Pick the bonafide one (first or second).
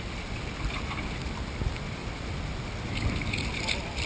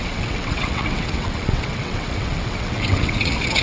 first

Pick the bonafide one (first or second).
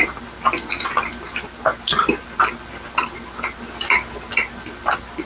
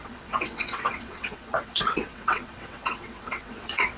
first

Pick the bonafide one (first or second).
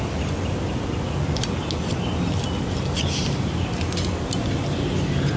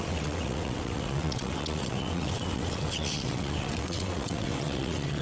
first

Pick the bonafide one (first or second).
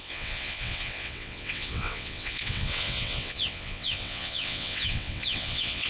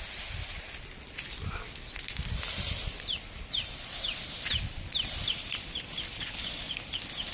second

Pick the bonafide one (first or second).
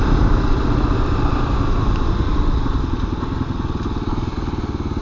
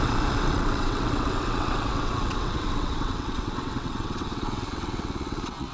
first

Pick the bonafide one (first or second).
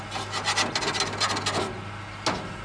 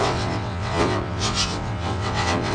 first